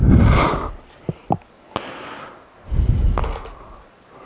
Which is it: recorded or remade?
recorded